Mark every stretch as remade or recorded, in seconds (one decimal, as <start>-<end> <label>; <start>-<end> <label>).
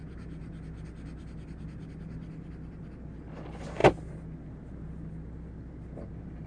0.0-6.5 recorded